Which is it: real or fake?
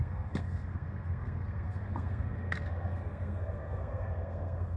fake